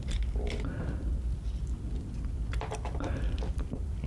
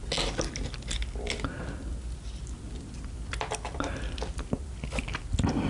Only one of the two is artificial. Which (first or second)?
first